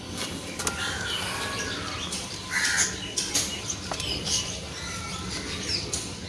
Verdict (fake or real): real